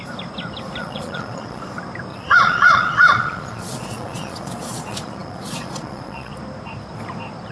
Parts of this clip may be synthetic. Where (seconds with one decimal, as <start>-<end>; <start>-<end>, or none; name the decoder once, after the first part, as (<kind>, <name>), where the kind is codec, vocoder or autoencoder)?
0.8-1.6 (vocoder, Vocos); 2.1-6.3